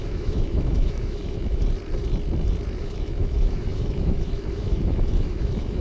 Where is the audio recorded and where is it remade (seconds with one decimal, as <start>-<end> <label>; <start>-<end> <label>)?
0.0-1.6 remade; 1.6-2.8 recorded; 2.8-5.8 remade